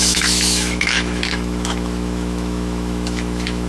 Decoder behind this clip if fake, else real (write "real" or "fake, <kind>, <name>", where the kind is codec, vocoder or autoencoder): fake, autoencoder, DAC-VAE